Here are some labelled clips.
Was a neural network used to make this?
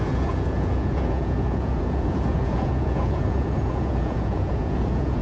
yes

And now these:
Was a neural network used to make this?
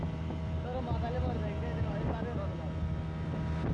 no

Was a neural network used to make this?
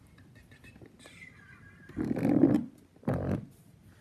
no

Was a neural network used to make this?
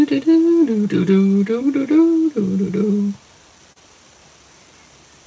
no